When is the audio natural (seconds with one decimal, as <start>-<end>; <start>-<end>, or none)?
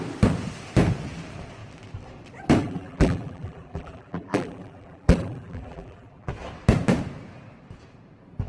0.0-2.6; 6.3-8.5